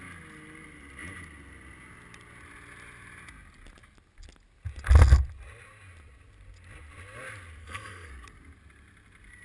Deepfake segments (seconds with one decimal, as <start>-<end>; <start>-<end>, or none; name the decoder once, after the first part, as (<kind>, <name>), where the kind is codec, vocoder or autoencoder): 7.6-8.1 (codec, SNAC)